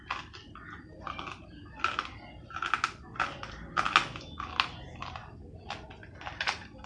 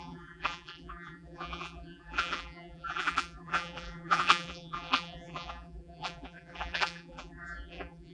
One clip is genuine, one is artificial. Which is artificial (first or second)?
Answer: second